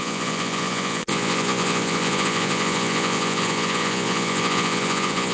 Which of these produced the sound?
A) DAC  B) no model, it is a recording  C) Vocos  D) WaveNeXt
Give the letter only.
C